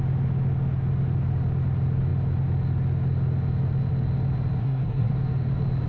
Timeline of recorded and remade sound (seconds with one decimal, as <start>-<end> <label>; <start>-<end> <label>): 0.0-4.6 recorded; 4.6-5.1 remade; 5.1-5.9 recorded